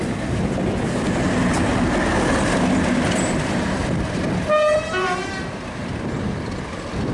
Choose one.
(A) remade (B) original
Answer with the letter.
B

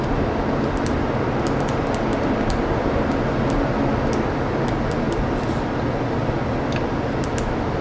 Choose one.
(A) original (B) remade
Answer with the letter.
A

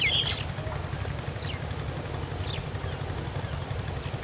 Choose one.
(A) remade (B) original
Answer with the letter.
B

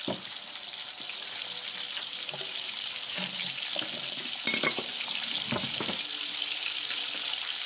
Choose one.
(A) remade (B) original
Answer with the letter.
A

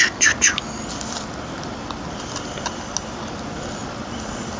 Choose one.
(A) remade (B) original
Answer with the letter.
B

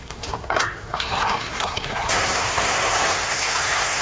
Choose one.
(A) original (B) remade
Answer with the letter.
B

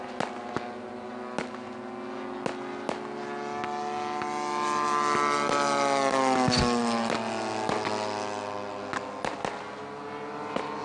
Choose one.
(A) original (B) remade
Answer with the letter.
A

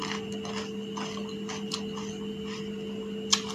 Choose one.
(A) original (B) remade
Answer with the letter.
A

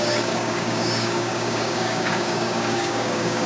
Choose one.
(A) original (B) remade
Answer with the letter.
B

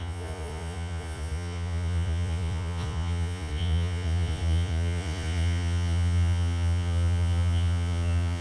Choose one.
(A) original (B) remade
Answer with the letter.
B